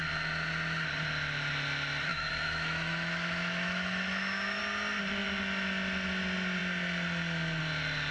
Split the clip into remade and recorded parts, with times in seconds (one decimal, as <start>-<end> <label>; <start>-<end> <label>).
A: 0.0-2.1 recorded; 2.1-4.6 remade; 4.6-8.1 recorded